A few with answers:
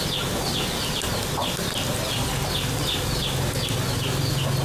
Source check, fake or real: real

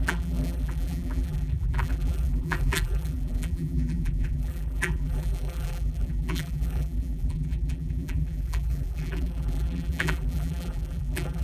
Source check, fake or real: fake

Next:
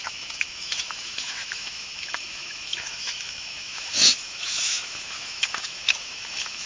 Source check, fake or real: fake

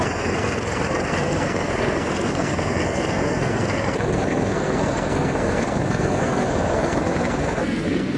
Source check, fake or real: fake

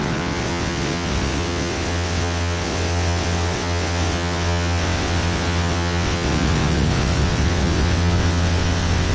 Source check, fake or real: fake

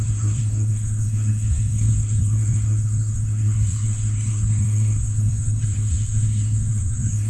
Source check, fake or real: fake